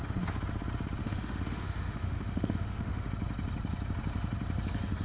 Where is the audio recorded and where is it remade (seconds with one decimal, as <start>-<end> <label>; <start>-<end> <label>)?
0.0-1.0 recorded; 1.0-3.1 remade; 3.1-5.0 recorded